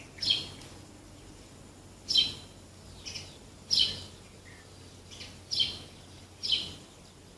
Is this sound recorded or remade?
recorded